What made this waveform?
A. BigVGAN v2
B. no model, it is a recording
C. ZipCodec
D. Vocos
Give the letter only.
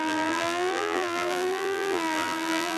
A